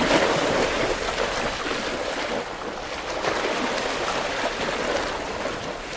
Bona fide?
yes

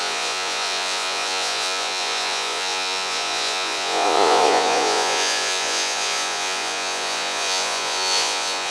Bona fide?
no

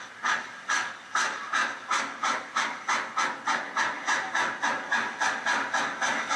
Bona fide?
yes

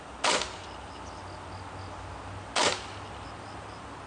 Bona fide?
yes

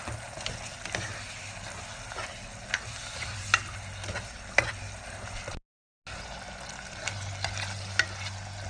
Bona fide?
yes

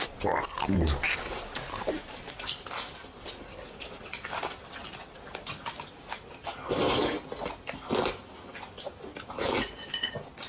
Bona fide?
yes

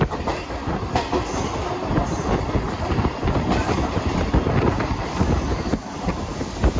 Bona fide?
yes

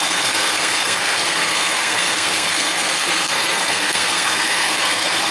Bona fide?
no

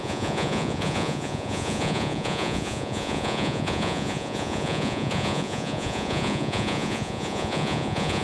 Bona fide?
no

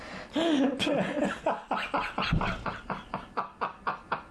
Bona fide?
yes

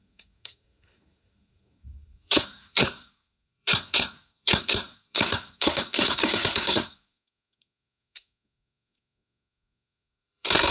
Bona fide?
no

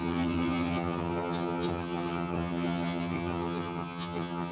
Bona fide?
no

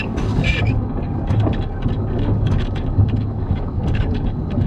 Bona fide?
no